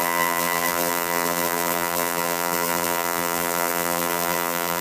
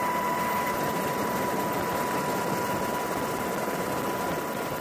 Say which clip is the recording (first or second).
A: second